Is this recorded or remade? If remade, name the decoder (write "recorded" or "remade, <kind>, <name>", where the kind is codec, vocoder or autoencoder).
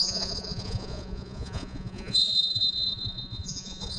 remade, vocoder, Vocos